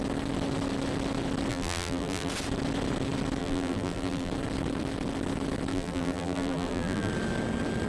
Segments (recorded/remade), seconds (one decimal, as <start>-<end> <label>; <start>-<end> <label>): 0.0-1.5 recorded; 1.5-2.3 remade; 2.3-3.4 recorded; 3.4-4.3 remade; 4.3-5.7 recorded; 5.7-7.1 remade; 7.1-7.9 recorded